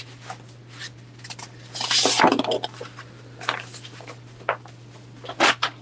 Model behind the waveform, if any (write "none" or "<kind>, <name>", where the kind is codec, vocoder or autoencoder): none